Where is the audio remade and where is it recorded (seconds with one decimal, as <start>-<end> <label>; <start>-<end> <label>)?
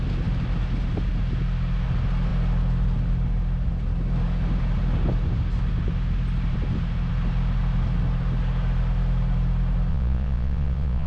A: 0.0-9.9 recorded; 9.9-11.1 remade